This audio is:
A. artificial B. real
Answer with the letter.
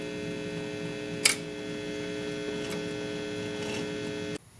B